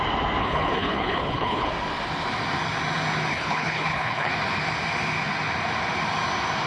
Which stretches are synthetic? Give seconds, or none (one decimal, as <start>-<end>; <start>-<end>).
0.4-1.7; 3.3-4.3